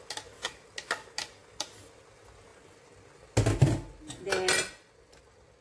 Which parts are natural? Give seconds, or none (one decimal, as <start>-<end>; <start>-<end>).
0.0-5.6